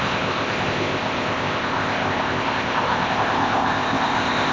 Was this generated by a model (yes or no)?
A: yes